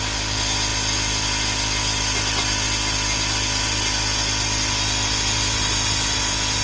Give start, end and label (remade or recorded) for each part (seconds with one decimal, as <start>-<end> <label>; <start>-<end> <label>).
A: 0.0-6.6 recorded